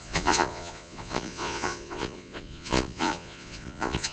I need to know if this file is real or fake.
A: fake